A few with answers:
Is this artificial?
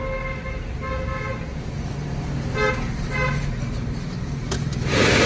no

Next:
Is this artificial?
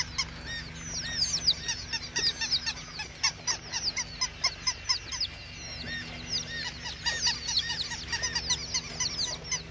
no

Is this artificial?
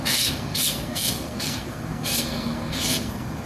yes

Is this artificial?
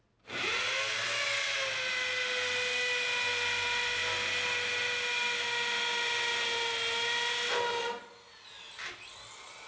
no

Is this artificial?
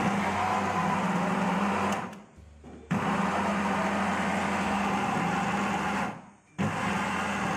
no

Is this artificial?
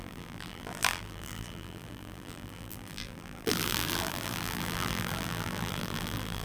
yes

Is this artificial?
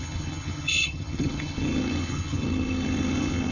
yes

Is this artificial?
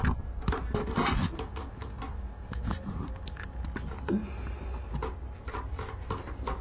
no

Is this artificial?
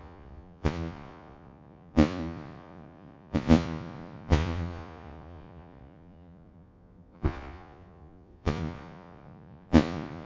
yes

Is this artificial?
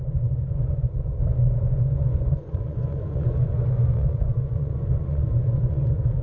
yes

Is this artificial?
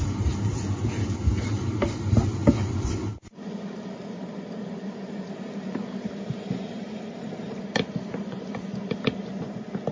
no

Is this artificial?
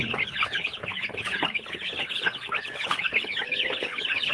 yes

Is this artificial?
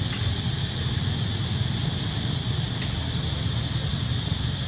no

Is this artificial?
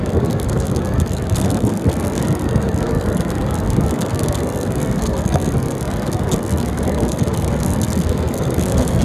yes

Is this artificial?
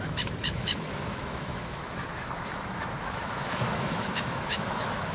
yes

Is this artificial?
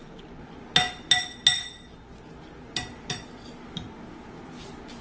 no